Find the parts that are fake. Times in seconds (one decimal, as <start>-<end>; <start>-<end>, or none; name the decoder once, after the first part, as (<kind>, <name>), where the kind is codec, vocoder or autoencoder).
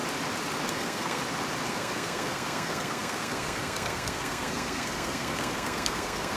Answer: 0.7-1.2 (codec, SNAC); 1.7-6.4